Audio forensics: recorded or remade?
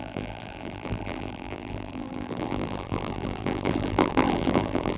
remade